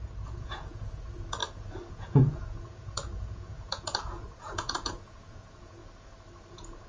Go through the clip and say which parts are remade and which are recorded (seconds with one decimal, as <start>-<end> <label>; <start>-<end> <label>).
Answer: 0.0-1.4 remade; 1.4-1.9 recorded; 1.9-5.8 remade; 5.8-6.5 recorded; 6.5-6.9 remade